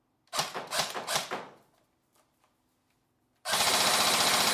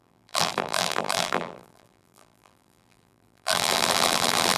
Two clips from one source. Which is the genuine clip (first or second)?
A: first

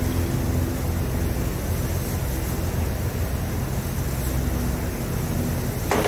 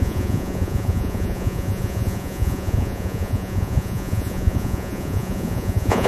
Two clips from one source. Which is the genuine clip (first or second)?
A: first